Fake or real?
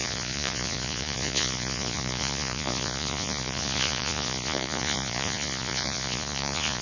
fake